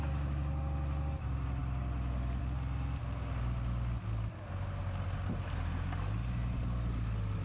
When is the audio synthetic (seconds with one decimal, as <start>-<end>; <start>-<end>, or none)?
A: none